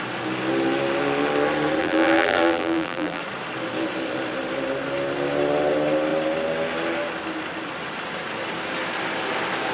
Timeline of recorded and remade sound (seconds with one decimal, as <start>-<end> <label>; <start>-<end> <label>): 0.0-1.8 recorded; 1.8-3.2 remade; 3.2-9.7 recorded

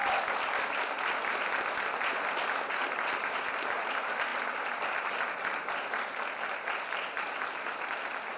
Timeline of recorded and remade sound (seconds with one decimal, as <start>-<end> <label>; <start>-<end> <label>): 0.0-8.4 recorded

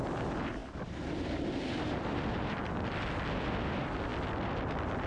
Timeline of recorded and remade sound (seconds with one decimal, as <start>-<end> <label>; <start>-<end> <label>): 0.0-5.1 recorded

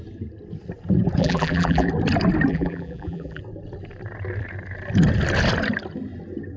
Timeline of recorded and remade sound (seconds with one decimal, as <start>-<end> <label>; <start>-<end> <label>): 0.0-1.2 recorded; 1.2-1.9 remade; 1.9-2.5 recorded; 2.5-3.4 remade; 3.4-6.6 recorded

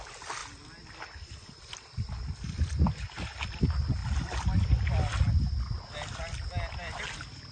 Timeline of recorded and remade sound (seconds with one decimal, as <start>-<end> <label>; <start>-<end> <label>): 0.0-7.5 recorded